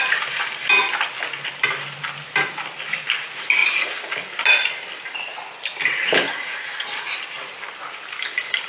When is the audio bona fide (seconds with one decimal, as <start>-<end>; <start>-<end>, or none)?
0.0-8.7